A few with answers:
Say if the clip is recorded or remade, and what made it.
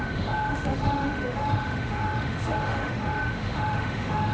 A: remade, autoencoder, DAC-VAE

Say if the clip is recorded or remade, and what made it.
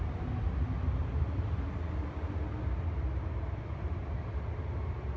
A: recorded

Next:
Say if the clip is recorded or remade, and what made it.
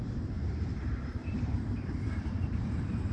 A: remade, vocoder, BigVGAN v2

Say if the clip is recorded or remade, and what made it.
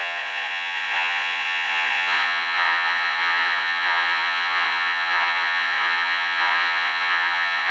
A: remade, vocoder, Vocos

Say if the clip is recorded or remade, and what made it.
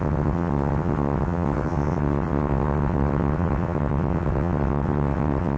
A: remade, vocoder, WaveNeXt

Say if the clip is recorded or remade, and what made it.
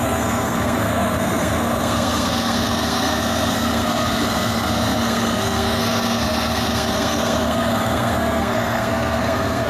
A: remade, codec, SNAC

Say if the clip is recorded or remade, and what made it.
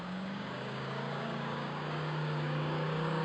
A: remade, codec, DAC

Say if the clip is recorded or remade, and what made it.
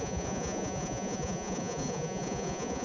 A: remade, vocoder, Vocos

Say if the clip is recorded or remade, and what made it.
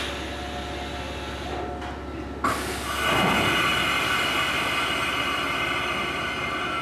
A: recorded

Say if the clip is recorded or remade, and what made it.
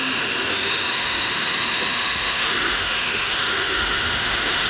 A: remade, autoencoder, DAC-VAE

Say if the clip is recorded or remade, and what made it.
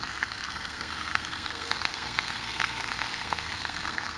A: remade, codec, SNAC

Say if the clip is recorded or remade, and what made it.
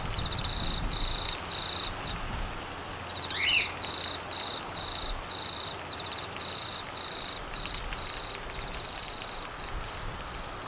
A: recorded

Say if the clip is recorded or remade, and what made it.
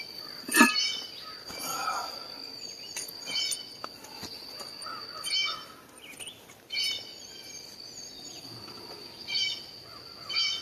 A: recorded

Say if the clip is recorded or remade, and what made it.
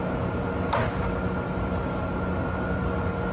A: recorded